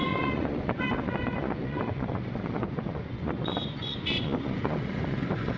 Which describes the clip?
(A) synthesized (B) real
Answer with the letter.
A